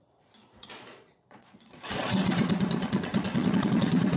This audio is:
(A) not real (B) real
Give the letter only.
A